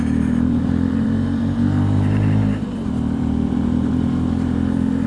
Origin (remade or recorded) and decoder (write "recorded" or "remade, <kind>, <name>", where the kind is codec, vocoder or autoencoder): remade, vocoder, BigVGAN v2